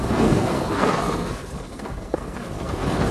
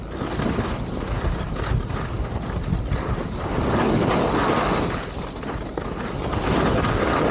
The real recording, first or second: second